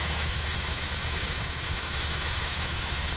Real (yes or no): no